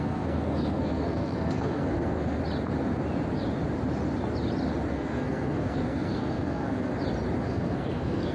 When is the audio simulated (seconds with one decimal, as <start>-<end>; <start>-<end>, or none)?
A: 0.0-2.4; 4.9-6.9; 7.4-8.3